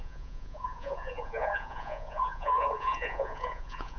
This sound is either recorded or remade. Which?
remade